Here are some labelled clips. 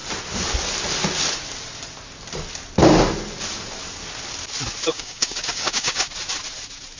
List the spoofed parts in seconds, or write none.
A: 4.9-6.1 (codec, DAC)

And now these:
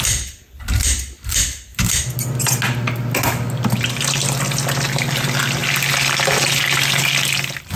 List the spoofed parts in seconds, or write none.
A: none

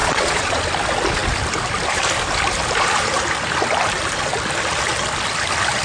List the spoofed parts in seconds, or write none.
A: 0.0-0.6 (vocoder, Vocos)

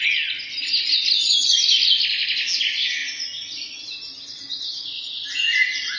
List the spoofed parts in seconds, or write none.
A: none

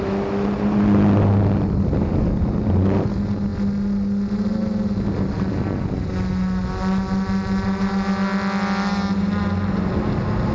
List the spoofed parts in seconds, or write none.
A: none

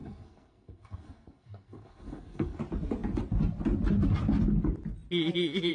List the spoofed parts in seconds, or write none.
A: 0.0-2.6 (codec, SNAC)

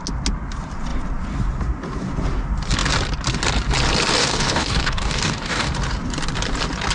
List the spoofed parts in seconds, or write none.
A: 4.2-5.7 (codec, DAC)